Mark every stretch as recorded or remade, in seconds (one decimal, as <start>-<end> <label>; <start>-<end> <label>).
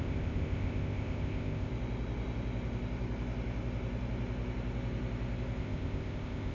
0.0-1.7 remade; 1.7-5.6 recorded; 5.6-6.5 remade